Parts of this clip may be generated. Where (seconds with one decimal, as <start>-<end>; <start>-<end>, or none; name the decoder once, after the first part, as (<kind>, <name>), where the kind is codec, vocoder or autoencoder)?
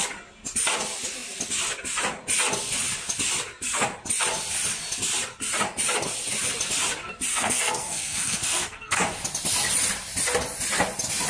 7.3-9.0 (codec, SNAC)